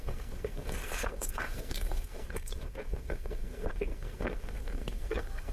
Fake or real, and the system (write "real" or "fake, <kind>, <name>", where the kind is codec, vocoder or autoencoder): fake, codec, SNAC